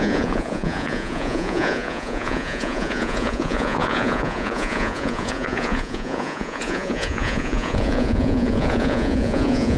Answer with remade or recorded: remade